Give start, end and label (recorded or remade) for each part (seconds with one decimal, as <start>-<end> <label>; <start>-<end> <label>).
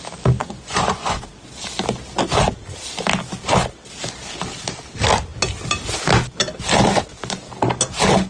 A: 0.0-0.4 recorded; 0.4-1.2 remade; 1.2-8.3 recorded